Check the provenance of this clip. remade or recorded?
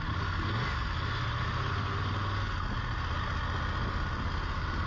recorded